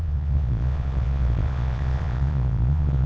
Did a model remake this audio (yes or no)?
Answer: yes